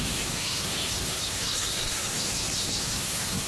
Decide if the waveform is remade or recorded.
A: remade